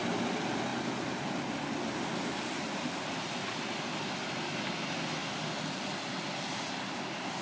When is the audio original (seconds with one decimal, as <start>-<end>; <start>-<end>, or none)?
0.0-7.4